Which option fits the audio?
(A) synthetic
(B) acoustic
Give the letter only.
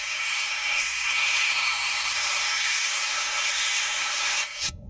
A